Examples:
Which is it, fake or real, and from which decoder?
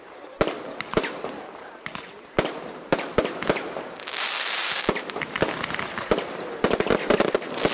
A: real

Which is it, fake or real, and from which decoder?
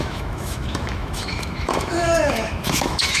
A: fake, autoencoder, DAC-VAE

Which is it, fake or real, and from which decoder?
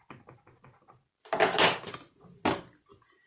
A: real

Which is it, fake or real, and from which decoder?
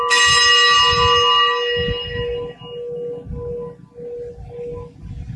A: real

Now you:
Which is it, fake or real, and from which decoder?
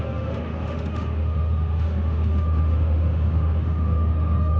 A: fake, autoencoder, DAC-VAE